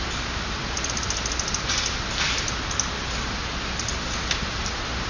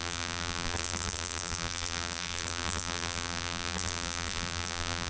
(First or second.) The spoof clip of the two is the second